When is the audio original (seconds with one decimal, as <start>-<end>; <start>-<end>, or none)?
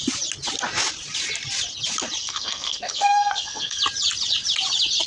0.0-2.2; 3.8-5.1